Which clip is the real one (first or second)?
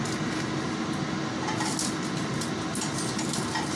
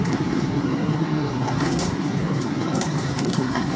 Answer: first